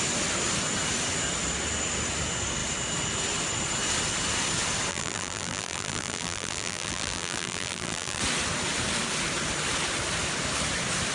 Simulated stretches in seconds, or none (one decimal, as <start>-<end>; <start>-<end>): 4.9-8.2